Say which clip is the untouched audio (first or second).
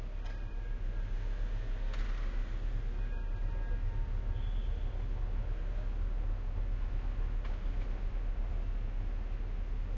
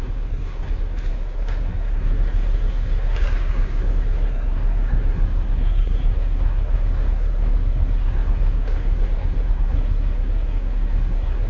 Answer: first